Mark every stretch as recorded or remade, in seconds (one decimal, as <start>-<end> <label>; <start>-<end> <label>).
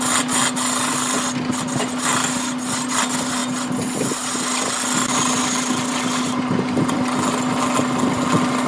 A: 0.0-8.7 recorded